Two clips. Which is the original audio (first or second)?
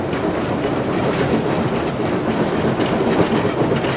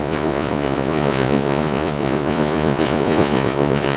first